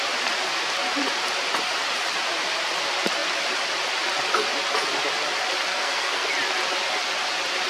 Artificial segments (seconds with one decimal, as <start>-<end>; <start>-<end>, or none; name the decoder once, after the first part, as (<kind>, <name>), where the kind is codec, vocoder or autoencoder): 5.7-6.3 (codec, SNAC)